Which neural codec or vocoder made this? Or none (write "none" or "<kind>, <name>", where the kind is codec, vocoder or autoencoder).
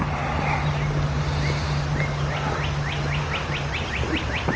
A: none